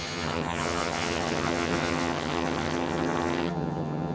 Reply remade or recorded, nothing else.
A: remade